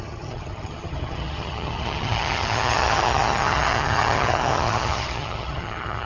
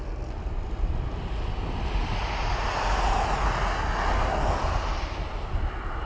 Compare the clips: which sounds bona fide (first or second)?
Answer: second